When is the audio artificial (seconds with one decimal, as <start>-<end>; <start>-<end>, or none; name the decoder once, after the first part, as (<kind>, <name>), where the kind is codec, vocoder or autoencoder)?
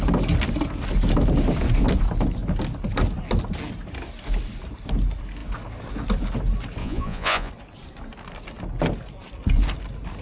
6.8-7.5 (vocoder, Vocos)